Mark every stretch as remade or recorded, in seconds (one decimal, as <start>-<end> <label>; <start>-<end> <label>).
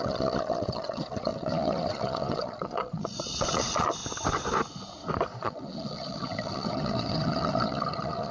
0.0-4.0 remade; 4.0-5.4 recorded; 5.4-8.3 remade